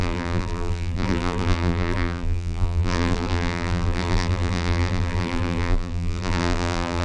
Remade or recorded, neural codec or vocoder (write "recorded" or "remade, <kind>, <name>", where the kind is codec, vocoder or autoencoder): remade, vocoder, BigVGAN v2